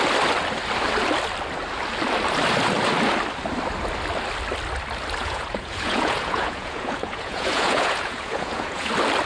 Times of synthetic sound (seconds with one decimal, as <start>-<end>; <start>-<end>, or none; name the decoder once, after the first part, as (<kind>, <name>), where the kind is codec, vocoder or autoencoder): 5.2-8.9 (vocoder, Vocos)